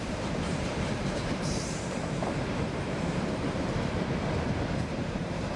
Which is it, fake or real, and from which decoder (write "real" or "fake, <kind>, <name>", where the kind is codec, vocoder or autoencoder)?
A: fake, vocoder, BigVGAN v2